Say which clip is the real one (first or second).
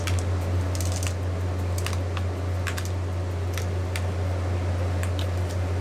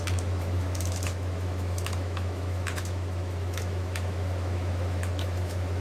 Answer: first